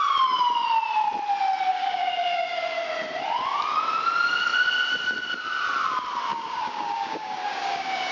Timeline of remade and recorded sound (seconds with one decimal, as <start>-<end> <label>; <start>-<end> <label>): 0.0-1.7 recorded; 1.7-2.8 remade; 2.8-6.3 recorded; 6.3-8.1 remade

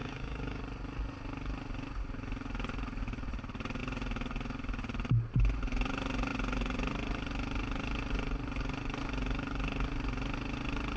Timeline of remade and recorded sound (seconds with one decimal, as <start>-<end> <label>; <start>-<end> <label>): 0.0-0.6 remade; 0.6-11.0 recorded